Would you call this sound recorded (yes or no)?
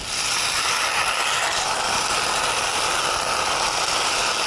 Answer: yes